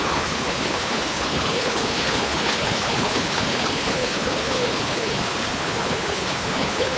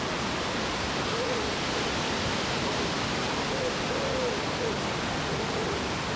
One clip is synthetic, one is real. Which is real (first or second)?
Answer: second